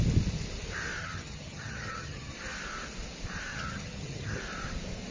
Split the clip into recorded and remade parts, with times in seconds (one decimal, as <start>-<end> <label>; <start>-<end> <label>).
0.0-1.0 recorded; 1.0-2.3 remade; 2.3-3.5 recorded; 3.5-4.4 remade; 4.4-5.1 recorded